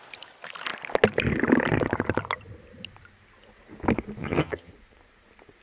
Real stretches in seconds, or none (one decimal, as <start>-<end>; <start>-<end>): 0.0-4.2; 4.7-5.6